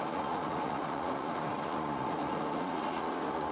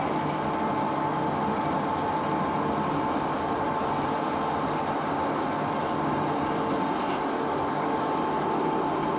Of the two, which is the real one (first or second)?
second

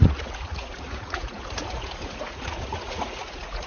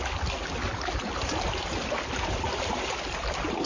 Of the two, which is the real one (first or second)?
second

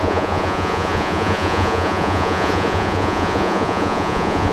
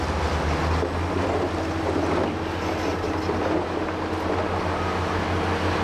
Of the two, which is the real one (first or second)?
second